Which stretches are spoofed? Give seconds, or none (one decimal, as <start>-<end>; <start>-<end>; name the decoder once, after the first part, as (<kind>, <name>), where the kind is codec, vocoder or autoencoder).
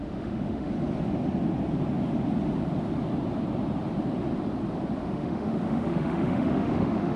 0.0-0.7 (autoencoder, DAC-VAE); 5.0-7.2